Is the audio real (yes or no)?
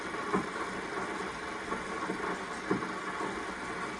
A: yes